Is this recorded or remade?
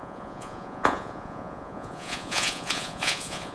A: remade